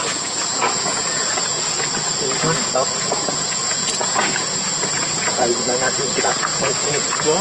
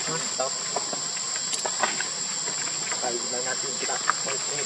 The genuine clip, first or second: second